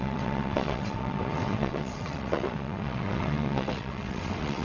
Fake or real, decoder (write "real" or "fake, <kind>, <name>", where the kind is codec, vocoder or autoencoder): fake, vocoder, WaveNeXt